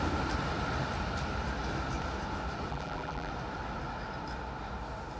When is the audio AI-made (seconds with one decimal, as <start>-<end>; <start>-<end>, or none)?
2.7-3.3